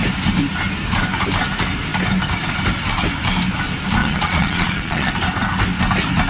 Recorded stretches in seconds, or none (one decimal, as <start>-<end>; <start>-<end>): 0.0-4.0; 5.1-6.3